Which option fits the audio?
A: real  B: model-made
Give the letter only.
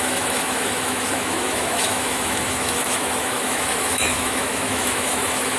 B